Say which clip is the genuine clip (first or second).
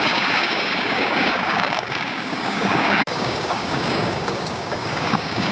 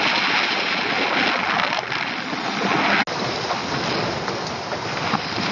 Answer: second